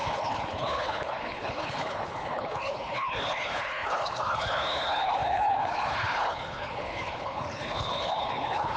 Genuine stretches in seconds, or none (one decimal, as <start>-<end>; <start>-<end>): none